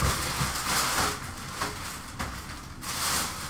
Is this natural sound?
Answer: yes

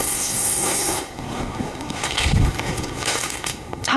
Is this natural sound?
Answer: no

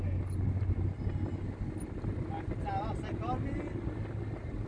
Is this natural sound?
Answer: yes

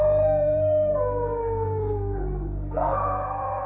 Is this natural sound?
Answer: no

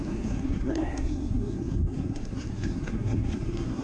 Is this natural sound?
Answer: no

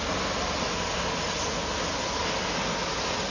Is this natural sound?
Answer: yes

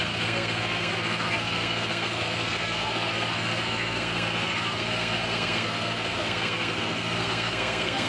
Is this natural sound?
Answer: no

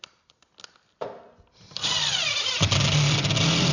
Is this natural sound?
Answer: yes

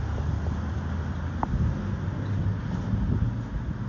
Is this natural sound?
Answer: yes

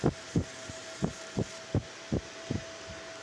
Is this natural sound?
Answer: yes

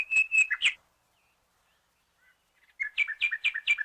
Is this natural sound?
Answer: yes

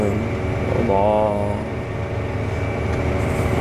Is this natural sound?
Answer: yes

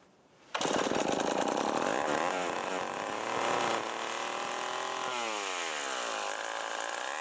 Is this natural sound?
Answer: yes